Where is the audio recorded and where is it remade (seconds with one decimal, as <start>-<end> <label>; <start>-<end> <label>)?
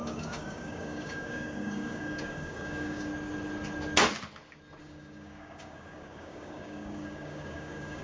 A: 0.0-3.1 remade; 3.1-4.8 recorded; 4.8-8.0 remade